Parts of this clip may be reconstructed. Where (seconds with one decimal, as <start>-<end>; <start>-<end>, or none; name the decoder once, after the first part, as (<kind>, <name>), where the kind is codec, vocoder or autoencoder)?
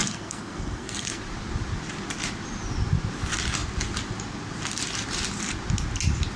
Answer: 0.0-1.2 (codec, SNAC)